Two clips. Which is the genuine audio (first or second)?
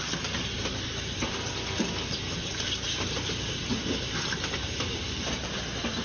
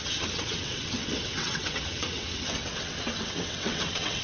first